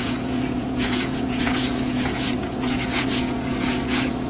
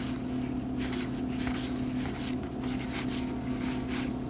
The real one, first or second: second